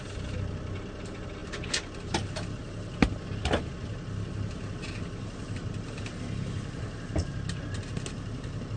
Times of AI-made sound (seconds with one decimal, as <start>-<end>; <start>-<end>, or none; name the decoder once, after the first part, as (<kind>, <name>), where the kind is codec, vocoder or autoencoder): none